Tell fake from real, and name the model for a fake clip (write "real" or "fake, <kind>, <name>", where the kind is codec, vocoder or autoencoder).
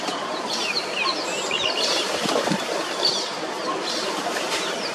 fake, vocoder, BigVGAN v2